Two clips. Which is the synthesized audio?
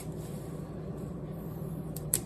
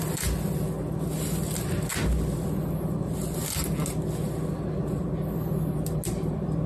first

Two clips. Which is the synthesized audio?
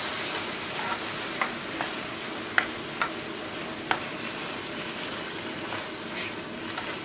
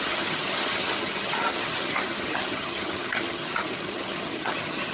second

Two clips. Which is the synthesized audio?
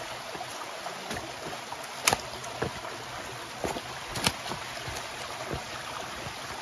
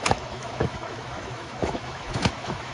second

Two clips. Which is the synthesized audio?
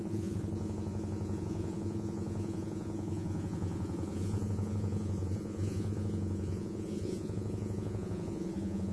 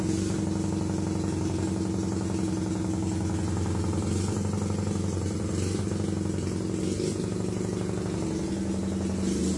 first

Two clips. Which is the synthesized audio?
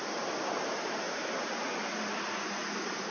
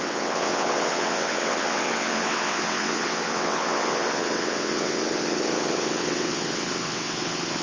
second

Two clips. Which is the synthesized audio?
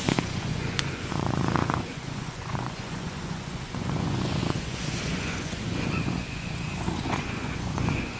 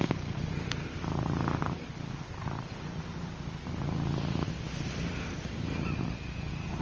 first